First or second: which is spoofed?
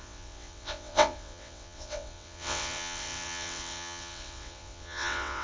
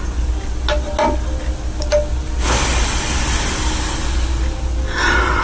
first